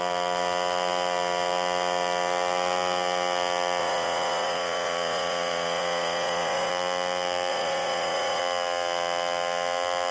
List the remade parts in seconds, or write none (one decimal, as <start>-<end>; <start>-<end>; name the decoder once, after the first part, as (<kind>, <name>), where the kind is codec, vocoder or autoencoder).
3.8-6.7 (vocoder, Vocos); 7.5-8.4